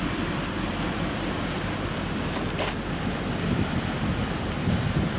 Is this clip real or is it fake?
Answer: real